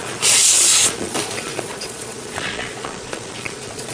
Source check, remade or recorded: remade